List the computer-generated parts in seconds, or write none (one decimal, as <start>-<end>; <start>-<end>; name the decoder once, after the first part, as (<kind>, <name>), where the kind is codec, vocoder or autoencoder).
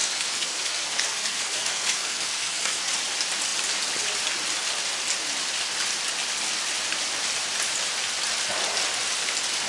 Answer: 0.0-2.9 (codec, SNAC)